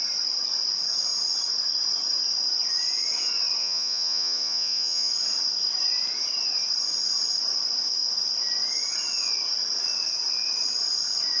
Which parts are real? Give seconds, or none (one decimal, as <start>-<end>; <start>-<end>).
0.0-3.6; 5.1-11.4